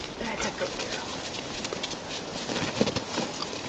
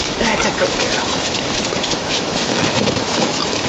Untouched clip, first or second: first